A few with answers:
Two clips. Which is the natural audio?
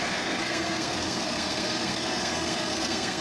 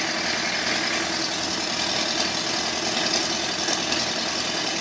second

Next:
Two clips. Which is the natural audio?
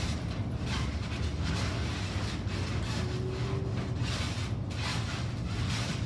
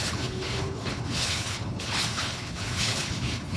first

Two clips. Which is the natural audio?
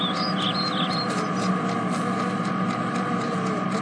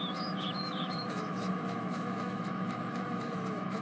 first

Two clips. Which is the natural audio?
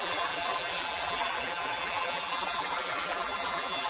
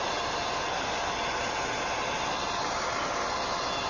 second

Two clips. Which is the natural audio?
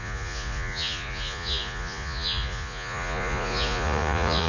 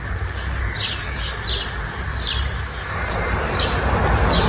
second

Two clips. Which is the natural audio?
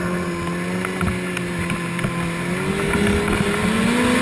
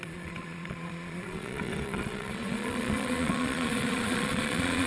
first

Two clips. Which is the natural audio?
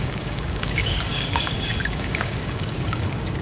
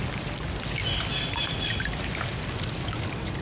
second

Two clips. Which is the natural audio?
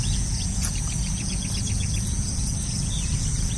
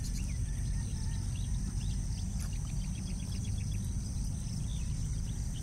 second